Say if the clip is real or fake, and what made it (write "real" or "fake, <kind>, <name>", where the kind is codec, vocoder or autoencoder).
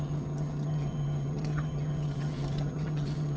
fake, vocoder, HiFi-GAN